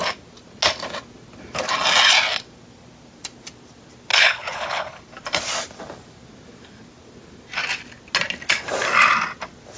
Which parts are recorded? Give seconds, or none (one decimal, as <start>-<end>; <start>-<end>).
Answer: 0.0-4.1; 5.0-9.8